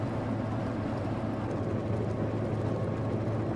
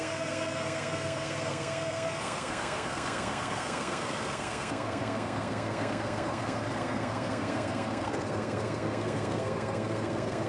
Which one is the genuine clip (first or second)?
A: first